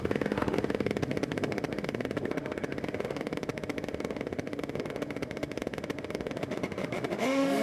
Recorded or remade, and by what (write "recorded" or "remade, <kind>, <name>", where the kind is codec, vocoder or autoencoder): remade, autoencoder, DAC-VAE